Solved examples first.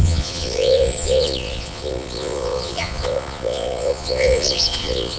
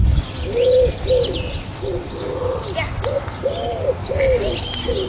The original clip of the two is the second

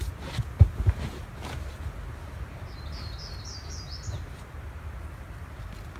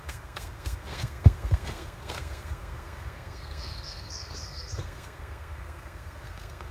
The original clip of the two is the first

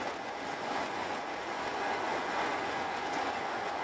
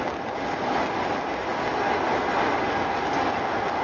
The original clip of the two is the second